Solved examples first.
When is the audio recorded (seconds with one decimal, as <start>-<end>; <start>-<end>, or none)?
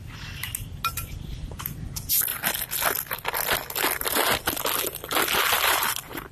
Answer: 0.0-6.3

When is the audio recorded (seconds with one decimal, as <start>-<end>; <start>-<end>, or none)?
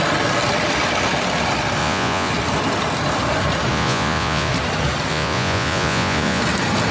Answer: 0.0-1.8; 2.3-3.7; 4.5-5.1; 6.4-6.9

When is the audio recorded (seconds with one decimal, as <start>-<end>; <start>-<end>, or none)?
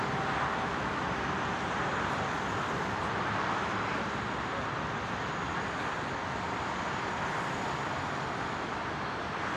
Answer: 0.0-0.5; 1.1-9.6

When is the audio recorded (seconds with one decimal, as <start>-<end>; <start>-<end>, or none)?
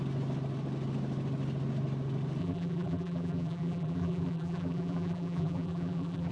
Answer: 0.0-2.4